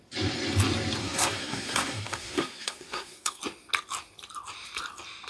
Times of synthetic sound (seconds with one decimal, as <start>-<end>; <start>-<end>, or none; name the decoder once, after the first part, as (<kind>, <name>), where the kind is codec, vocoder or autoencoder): 1.0-3.4 (codec, SNAC)

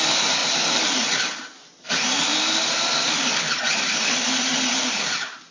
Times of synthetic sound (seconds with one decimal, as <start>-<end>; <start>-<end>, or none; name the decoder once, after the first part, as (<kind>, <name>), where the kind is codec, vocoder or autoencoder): none

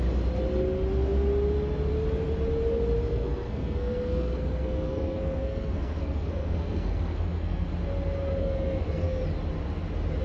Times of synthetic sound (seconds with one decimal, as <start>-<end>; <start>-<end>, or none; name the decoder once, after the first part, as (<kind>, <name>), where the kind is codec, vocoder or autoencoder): 3.1-7.7 (codec, SNAC); 8.4-9.2

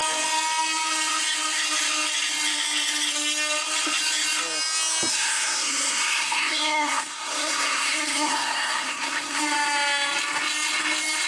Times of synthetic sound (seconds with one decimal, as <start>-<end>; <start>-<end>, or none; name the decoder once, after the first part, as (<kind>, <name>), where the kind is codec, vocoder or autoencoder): 5.1-9.4 (codec, SNAC)

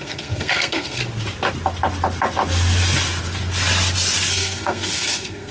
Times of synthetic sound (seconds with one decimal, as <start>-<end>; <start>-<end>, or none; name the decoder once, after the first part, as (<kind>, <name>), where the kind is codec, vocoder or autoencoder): 0.0-1.0 (codec, SNAC); 4.3-5.5

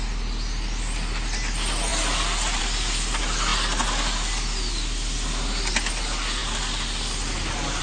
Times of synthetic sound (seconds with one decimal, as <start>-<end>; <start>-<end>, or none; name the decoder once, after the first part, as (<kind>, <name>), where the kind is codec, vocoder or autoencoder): none